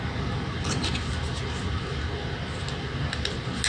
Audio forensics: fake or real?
real